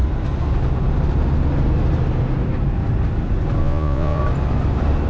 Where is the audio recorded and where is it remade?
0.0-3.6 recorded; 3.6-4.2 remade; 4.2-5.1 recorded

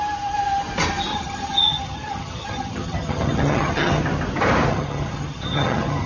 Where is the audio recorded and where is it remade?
0.0-1.1 recorded; 1.1-4.0 remade; 4.0-4.7 recorded; 4.7-6.1 remade

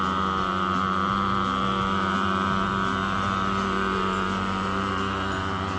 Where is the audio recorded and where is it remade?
0.0-5.8 recorded

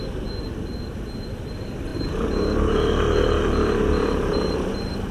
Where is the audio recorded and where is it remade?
0.0-1.9 recorded; 1.9-5.1 remade